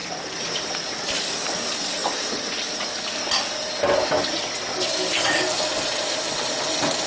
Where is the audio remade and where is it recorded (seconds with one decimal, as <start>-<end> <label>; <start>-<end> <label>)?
0.0-7.1 recorded